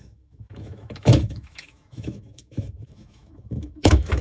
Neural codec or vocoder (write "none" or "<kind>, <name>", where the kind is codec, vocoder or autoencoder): autoencoder, DAC-VAE